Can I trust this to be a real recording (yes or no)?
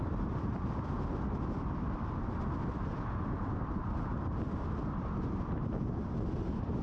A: yes